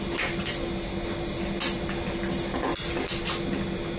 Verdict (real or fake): real